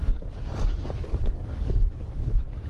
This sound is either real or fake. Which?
fake